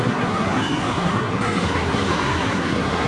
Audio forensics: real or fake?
fake